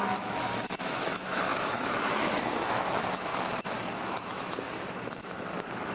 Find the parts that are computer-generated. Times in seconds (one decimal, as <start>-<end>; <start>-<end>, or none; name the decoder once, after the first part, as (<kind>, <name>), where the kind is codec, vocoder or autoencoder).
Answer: 0.0-3.3 (autoencoder, DAC-VAE); 3.9-5.9